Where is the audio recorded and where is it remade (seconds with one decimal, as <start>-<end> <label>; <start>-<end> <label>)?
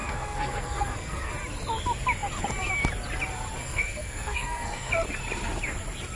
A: 0.0-1.3 remade; 1.3-3.6 recorded; 3.6-4.9 remade; 4.9-6.2 recorded